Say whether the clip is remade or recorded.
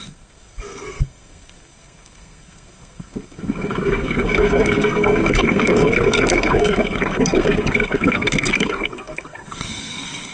remade